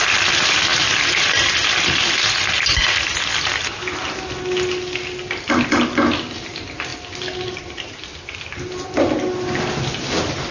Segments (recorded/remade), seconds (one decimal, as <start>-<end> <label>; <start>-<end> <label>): 0.0-10.5 recorded